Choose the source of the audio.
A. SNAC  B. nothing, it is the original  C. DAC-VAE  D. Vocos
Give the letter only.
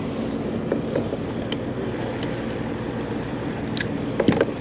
B